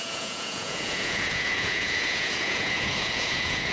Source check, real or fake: fake